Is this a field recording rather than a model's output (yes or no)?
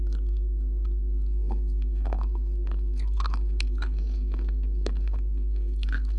no